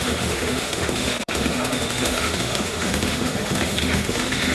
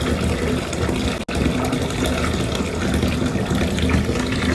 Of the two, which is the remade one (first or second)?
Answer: first